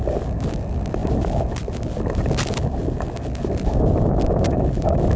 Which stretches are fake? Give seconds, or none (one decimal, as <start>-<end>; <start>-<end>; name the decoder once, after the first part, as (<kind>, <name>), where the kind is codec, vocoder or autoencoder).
none